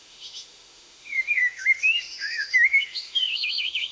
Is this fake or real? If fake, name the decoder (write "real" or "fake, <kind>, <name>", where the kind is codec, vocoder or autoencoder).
fake, autoencoder, DAC-VAE